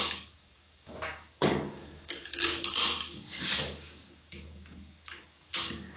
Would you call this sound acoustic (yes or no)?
no